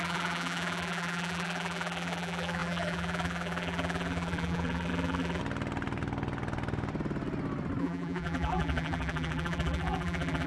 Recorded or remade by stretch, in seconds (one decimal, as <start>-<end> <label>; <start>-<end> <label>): 0.0-5.4 remade; 5.4-7.8 recorded; 7.8-10.5 remade

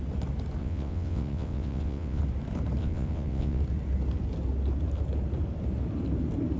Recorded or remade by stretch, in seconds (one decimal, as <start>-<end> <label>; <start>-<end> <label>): 0.0-0.6 recorded; 0.6-2.2 remade; 2.2-2.8 recorded; 2.8-3.6 remade; 3.6-6.6 recorded

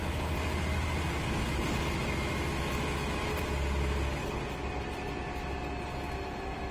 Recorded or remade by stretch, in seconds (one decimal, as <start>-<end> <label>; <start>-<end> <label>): 0.0-6.7 recorded